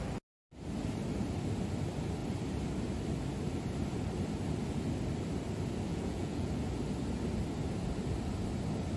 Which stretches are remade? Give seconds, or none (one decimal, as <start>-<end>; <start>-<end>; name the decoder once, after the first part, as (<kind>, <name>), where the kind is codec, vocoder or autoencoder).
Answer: 5.9-6.5 (vocoder, Vocos)